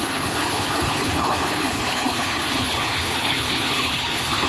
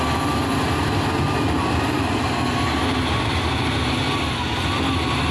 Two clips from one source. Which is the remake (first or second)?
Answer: first